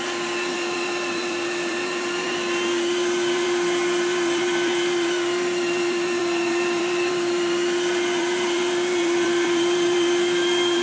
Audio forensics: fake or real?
fake